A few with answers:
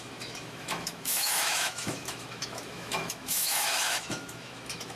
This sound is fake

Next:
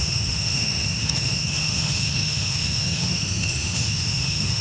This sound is fake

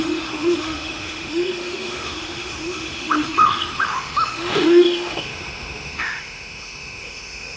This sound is fake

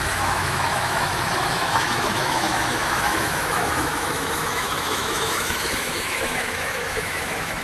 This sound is fake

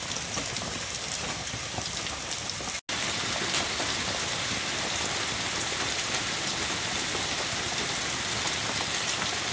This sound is real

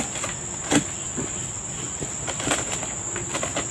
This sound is real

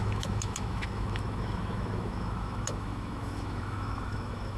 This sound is fake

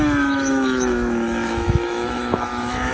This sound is fake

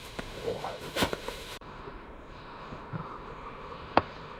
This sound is fake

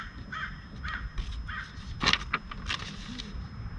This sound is real